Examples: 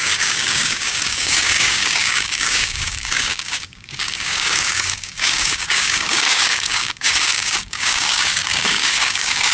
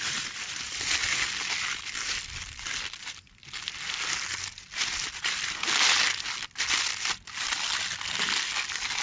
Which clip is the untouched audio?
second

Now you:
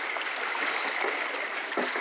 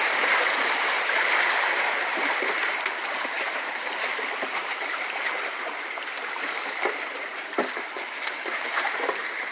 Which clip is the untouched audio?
first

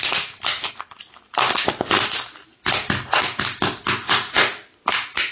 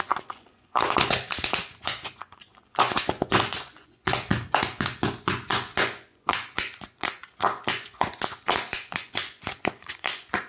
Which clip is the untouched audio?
first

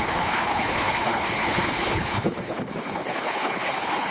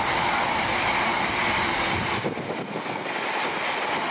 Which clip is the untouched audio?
second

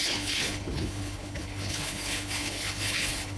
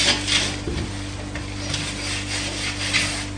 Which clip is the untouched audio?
second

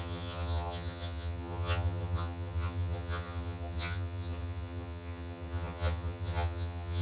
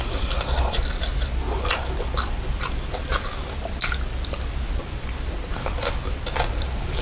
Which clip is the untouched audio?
second